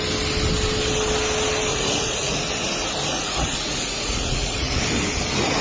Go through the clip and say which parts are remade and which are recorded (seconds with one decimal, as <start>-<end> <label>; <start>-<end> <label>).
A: 0.0-1.7 recorded; 1.7-2.4 remade; 2.4-3.1 recorded; 3.1-4.8 remade; 4.8-5.6 recorded